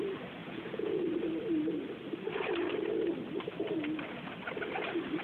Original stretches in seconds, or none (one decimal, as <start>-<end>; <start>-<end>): 0.0-0.4; 1.0-5.2